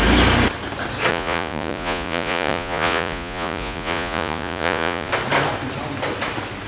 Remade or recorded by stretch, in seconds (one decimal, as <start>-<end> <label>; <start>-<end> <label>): 0.0-1.1 recorded; 1.1-5.1 remade; 5.1-6.7 recorded